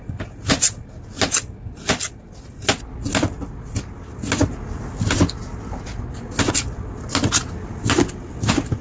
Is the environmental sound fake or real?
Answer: real